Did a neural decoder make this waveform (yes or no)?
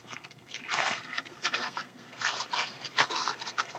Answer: yes